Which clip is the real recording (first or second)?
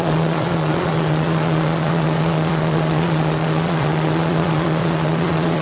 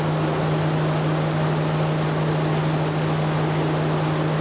second